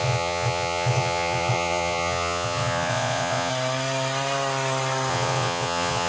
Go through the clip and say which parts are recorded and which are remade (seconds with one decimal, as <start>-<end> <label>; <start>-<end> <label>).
0.0-3.5 remade; 3.5-5.1 recorded; 5.1-6.1 remade